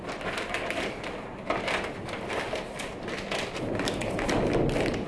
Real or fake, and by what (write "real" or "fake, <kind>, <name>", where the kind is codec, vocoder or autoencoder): real